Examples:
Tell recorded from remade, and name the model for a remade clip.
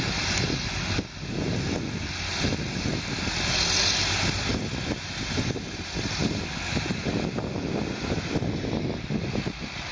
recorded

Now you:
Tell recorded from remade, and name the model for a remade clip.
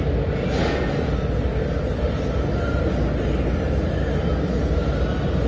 recorded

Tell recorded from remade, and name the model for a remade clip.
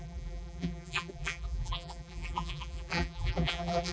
remade, vocoder, BigVGAN v2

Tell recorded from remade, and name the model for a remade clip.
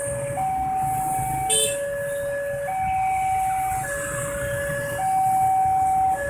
recorded